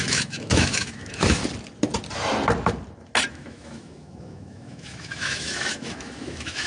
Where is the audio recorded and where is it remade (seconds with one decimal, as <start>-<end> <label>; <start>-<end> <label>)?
0.0-1.4 remade; 1.4-3.3 recorded; 3.3-6.7 remade

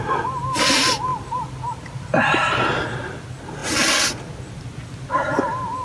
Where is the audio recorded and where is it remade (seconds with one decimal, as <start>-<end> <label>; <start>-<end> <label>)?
0.0-5.8 recorded

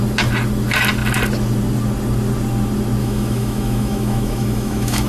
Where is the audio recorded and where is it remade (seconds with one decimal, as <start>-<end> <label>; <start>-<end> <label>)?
0.0-3.0 recorded; 3.0-5.1 remade

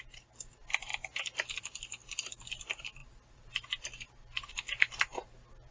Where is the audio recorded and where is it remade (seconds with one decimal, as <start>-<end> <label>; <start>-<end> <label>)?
0.0-5.7 recorded

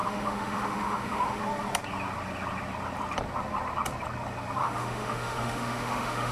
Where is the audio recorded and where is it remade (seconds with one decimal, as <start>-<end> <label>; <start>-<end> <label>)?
0.0-1.4 remade; 1.4-4.6 recorded; 4.6-6.3 remade